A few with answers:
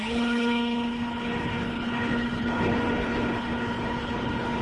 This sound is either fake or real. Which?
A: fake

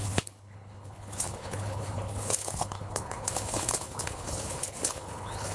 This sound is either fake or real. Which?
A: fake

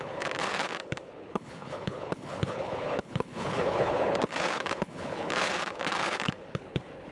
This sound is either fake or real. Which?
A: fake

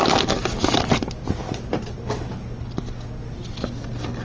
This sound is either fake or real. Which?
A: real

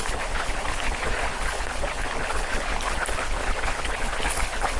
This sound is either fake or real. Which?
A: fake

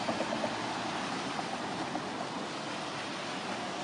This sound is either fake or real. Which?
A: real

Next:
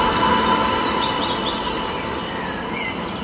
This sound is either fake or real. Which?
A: real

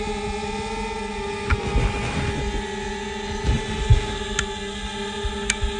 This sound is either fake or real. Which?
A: real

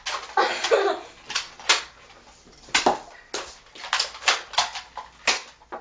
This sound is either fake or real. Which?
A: real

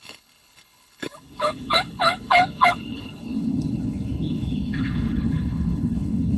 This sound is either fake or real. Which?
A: fake